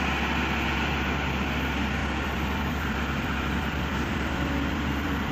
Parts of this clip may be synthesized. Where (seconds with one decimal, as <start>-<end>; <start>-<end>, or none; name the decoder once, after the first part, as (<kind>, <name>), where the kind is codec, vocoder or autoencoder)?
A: 2.0-5.3 (vocoder, BigVGAN v2)